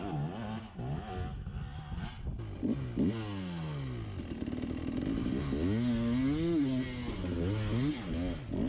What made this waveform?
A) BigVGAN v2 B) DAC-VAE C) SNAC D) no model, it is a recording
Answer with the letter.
D